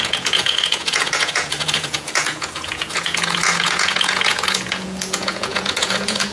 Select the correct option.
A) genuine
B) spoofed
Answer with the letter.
B